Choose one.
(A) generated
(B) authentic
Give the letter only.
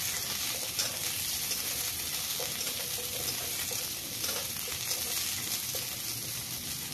B